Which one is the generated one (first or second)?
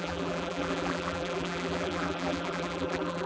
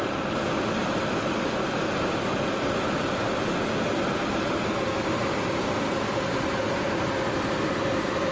first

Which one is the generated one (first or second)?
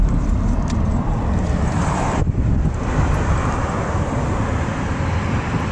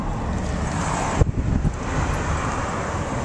first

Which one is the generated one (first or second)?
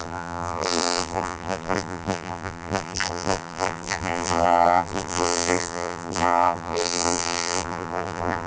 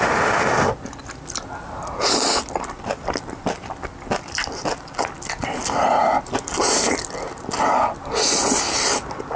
first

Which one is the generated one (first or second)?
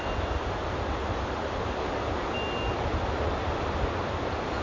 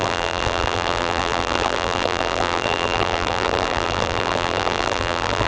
second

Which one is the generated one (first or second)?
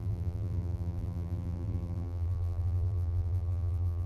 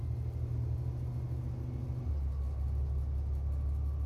first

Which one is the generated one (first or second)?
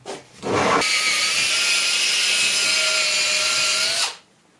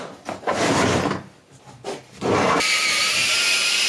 second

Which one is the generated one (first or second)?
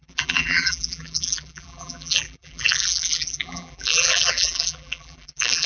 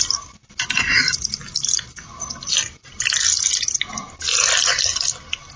first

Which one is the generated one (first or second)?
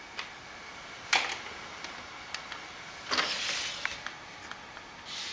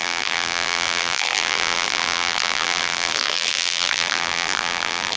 second